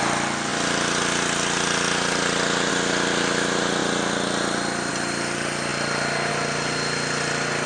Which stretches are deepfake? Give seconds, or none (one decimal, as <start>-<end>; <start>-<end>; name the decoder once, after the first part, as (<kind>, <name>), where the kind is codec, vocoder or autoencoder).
none